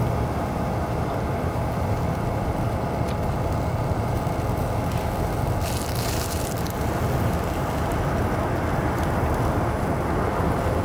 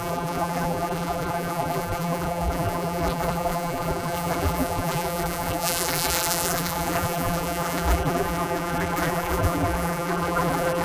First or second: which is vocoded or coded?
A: second